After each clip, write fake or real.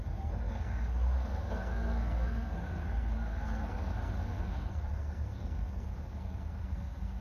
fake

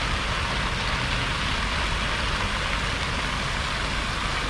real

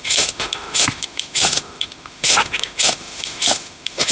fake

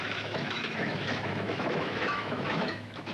fake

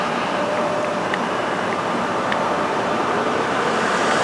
fake